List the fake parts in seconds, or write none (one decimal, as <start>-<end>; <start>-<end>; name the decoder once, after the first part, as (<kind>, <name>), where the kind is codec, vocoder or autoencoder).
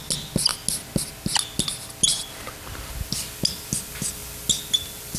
none